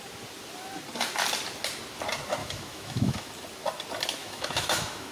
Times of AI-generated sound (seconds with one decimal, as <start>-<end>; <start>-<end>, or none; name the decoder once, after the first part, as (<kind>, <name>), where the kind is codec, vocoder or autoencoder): 2.4-3.3 (autoencoder, DAC-VAE); 4.2-5.1